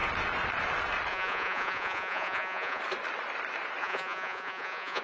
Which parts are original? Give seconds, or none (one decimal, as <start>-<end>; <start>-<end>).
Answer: 0.0-1.1; 2.8-3.8